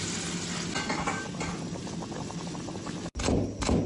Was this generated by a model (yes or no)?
no